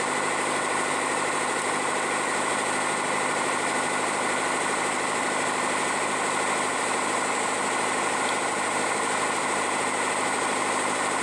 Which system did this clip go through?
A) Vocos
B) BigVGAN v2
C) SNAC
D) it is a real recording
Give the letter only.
D